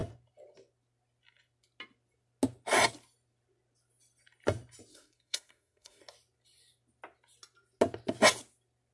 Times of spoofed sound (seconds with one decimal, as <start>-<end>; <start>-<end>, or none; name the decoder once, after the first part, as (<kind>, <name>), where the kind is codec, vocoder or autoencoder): 4.9-6.0 (codec, SNAC)